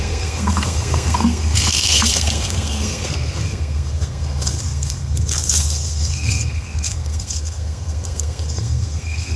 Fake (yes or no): yes